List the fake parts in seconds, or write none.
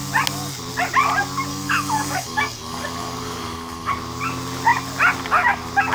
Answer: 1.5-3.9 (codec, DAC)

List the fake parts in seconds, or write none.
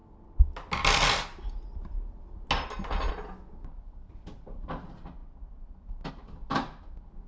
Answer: none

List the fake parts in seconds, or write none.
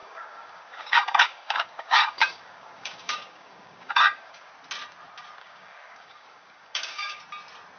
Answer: 0.0-4.5 (codec, DAC); 5.4-7.2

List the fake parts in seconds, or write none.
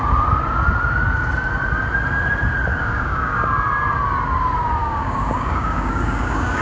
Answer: 2.7-3.5 (codec, DAC); 4.8-6.6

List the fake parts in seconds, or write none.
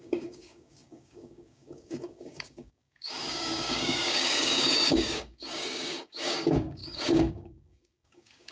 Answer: 0.0-8.5 (codec, DAC)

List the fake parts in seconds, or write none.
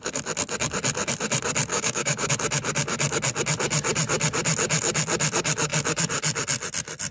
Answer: 1.7-2.3 (codec, DAC)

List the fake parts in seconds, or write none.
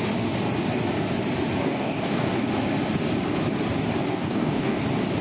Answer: 1.6-2.4 (codec, DAC); 4.1-4.8